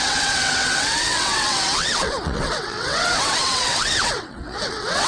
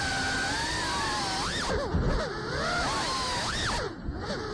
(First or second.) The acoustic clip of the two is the second